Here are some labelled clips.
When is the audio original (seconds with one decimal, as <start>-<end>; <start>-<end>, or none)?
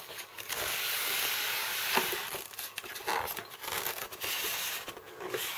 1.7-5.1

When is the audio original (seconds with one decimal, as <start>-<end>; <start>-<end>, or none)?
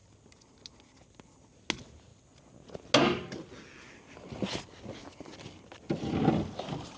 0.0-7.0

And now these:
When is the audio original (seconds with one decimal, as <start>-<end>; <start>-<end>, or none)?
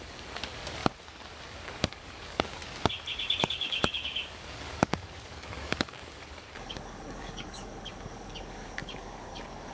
0.8-1.3; 2.6-3.4